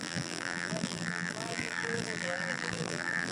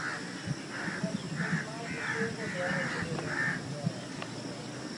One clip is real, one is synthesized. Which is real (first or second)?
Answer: second